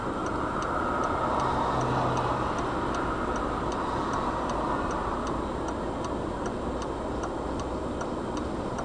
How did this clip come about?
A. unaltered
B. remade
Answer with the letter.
A